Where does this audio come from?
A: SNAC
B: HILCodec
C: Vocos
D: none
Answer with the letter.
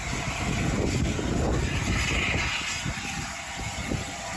D